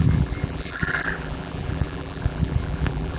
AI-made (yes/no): yes